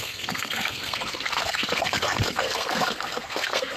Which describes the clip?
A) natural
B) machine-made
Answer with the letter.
B